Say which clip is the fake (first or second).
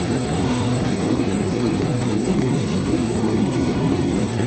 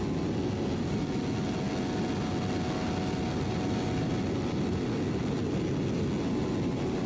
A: first